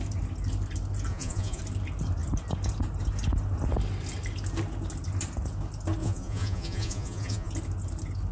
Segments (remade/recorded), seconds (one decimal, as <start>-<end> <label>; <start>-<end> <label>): 0.0-1.1 recorded; 1.1-1.6 remade; 1.6-6.0 recorded; 6.0-7.5 remade; 7.5-8.3 recorded